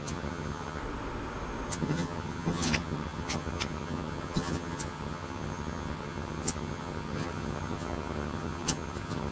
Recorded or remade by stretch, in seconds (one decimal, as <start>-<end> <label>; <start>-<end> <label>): 0.0-0.8 remade; 0.8-1.7 recorded; 1.7-9.3 remade